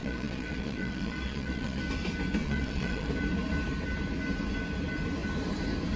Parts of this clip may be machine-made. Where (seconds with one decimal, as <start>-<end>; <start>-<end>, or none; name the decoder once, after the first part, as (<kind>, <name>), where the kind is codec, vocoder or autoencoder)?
0.0-1.8 (vocoder, Vocos); 2.4-3.1